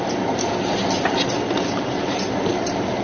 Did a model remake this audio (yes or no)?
no